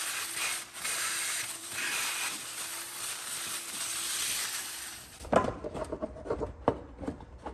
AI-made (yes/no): yes